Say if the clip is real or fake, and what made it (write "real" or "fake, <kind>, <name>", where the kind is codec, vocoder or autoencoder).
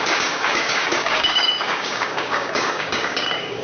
fake, codec, DAC